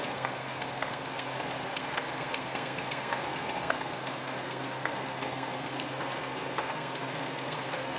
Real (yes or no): no